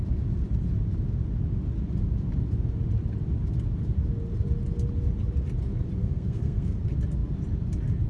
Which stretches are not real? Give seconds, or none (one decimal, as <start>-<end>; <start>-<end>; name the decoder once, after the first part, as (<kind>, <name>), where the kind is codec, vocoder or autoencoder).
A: 6.0-6.8 (codec, SNAC)